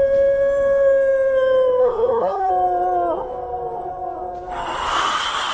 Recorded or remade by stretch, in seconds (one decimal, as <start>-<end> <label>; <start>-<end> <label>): 0.0-1.8 recorded; 1.8-2.5 remade; 2.5-5.5 recorded